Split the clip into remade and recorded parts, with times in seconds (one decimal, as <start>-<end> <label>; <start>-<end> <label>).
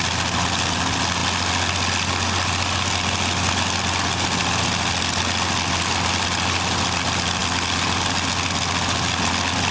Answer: 0.0-9.7 recorded